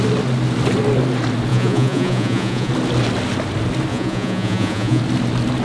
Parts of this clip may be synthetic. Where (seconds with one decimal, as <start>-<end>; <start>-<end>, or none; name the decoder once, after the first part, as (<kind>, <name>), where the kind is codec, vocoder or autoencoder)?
1.5-2.7 (vocoder, Vocos); 3.9-5.0